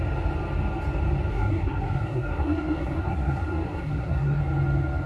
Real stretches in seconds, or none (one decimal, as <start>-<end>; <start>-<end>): 0.0-1.3; 4.4-5.1